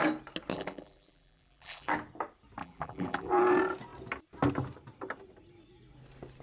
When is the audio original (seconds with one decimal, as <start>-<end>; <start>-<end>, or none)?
0.0-0.5; 1.9-2.6; 3.3-6.4